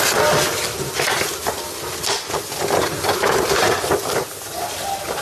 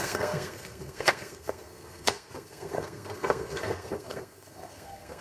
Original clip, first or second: first